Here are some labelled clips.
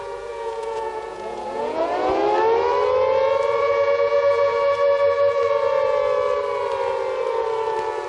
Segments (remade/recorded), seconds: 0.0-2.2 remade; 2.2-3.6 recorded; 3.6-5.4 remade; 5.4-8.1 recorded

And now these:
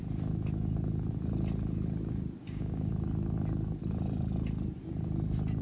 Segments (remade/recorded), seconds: 0.0-2.4 recorded; 2.4-2.9 remade; 2.9-5.6 recorded